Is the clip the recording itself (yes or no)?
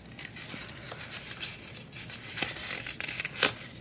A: yes